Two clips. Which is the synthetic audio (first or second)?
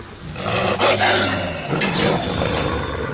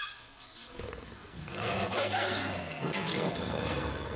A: second